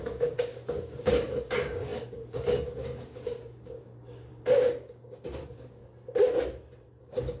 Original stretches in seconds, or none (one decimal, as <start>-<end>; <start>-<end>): 5.8-7.0